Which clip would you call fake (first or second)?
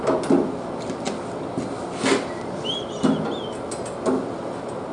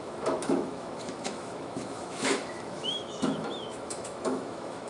second